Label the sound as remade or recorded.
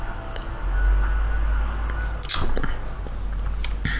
recorded